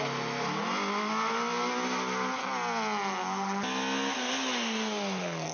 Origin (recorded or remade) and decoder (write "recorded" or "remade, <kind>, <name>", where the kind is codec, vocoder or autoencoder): recorded